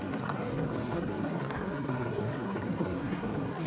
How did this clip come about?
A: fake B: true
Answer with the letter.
A